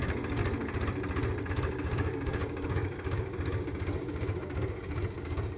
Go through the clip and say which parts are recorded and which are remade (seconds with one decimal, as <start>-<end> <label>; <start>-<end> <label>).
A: 0.0-0.4 remade; 0.4-1.5 recorded; 1.5-5.6 remade

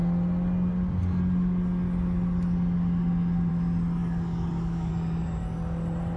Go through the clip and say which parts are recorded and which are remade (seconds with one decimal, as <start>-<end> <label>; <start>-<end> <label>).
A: 0.0-4.0 recorded; 4.0-4.9 remade; 4.9-6.2 recorded

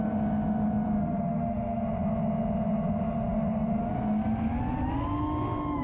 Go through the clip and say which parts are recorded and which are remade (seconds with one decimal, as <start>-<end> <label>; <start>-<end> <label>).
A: 0.0-5.8 recorded